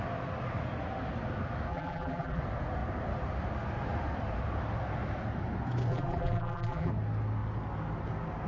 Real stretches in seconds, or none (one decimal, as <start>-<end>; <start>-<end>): 0.0-1.7; 2.4-5.9; 6.9-8.5